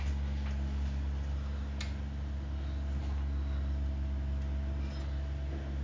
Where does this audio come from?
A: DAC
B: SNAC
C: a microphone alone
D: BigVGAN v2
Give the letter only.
C